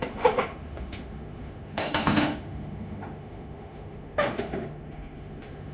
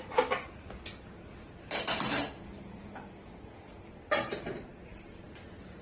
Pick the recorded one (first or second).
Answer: second